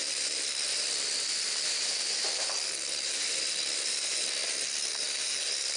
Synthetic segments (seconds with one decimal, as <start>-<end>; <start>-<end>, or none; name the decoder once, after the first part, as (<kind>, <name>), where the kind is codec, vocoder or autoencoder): 0.0-3.5 (vocoder, BigVGAN v2)